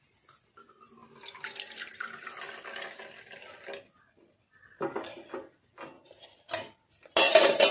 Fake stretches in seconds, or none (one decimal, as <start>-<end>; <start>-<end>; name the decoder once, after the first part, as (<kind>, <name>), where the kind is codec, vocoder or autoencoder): none